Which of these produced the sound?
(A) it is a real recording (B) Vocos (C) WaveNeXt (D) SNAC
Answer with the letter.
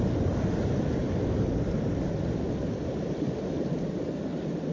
A